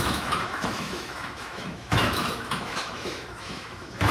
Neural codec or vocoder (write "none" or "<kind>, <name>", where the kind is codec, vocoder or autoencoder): autoencoder, DAC-VAE